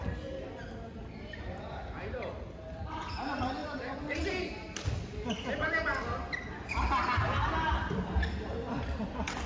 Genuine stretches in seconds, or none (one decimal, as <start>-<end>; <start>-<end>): 0.0-9.5